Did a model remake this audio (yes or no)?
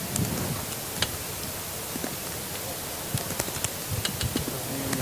no